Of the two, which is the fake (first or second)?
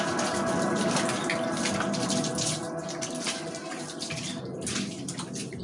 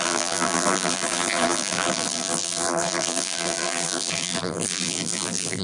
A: second